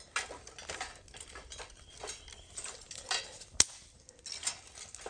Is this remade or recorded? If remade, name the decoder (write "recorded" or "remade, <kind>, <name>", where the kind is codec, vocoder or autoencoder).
recorded